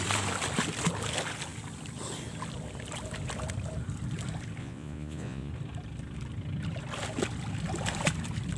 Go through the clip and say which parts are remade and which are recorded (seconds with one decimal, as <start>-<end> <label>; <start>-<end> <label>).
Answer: 0.0-4.6 recorded; 4.6-5.5 remade; 5.5-8.6 recorded